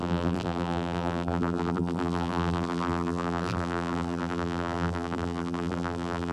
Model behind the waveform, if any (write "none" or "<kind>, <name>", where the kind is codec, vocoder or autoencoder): vocoder, BigVGAN v2